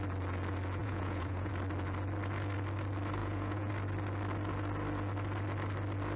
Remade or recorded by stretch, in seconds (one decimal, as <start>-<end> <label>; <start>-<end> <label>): 0.0-0.8 recorded; 0.8-1.5 remade; 1.5-3.2 recorded; 3.2-3.7 remade; 3.7-6.2 recorded